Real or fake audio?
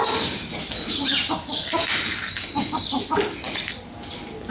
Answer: real